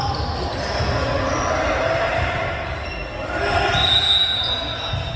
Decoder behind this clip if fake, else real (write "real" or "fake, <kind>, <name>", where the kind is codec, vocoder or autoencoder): real